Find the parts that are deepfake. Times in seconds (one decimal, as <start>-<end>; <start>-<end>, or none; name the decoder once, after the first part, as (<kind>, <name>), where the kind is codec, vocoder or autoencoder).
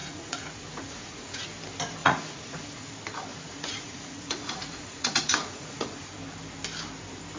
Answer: 0.0-1.5 (vocoder, Vocos); 2.0-2.9; 3.3-6.1